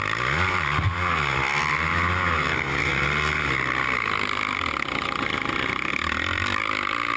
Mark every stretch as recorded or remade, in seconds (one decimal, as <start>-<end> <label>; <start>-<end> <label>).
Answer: 0.0-7.2 recorded